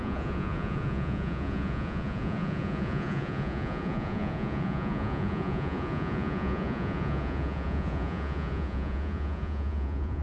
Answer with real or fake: fake